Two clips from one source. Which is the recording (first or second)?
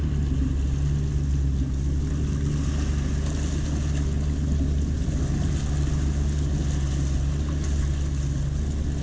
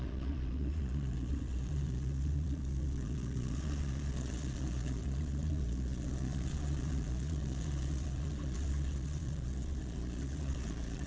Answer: first